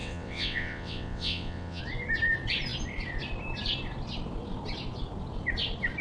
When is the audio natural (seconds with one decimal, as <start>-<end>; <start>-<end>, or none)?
1.8-6.0